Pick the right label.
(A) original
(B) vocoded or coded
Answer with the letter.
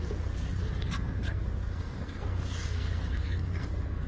B